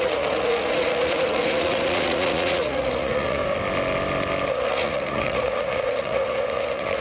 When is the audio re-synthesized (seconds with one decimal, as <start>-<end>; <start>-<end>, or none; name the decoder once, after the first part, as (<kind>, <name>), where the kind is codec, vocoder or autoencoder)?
0.0-3.4 (vocoder, Vocos); 4.5-7.0